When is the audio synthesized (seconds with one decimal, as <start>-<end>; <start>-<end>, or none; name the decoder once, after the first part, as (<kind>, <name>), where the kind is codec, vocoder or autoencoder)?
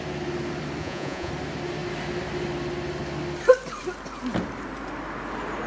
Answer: 0.8-1.3 (vocoder, Vocos)